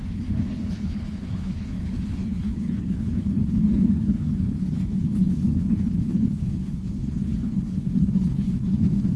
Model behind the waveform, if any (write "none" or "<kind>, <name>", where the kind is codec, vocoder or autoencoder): codec, HILCodec